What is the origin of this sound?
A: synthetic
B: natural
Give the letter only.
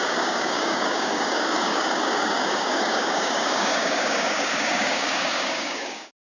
A